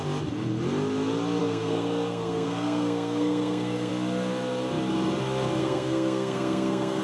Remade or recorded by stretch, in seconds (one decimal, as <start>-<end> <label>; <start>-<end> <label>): 0.0-1.4 recorded; 1.4-3.9 remade; 3.9-5.6 recorded; 5.6-7.0 remade